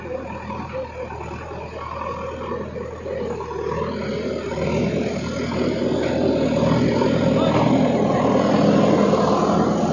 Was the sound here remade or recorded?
recorded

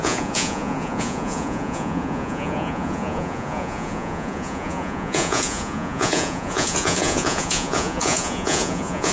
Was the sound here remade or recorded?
remade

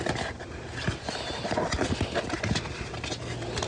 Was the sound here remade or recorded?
recorded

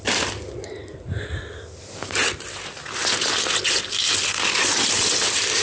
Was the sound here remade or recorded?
recorded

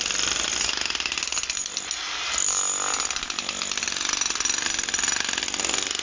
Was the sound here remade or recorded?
recorded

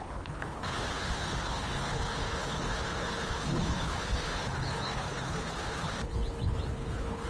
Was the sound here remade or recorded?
remade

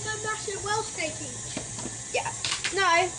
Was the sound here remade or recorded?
recorded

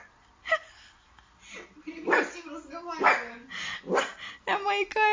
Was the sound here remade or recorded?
recorded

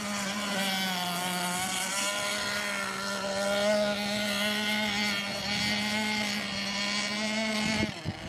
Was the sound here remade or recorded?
recorded